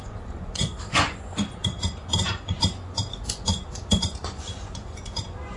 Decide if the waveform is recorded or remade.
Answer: remade